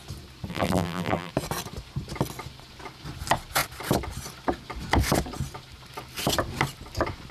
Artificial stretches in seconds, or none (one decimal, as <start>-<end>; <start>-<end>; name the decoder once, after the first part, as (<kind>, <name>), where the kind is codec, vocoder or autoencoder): 0.5-1.3 (vocoder, BigVGAN v2)